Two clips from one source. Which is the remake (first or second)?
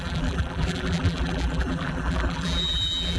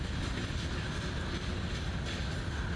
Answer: first